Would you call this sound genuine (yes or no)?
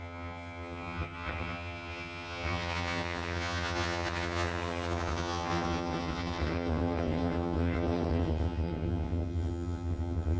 no